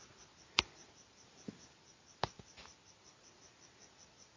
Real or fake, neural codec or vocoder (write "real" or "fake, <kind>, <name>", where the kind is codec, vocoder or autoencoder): real